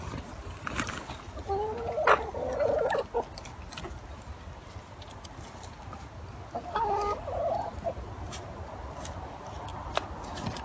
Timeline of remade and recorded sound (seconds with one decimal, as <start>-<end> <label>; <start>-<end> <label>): 0.0-10.6 recorded